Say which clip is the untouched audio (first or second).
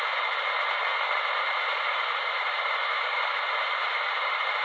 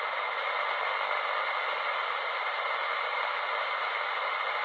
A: second